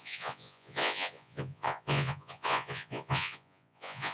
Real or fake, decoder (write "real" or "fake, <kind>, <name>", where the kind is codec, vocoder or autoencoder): fake, vocoder, Vocos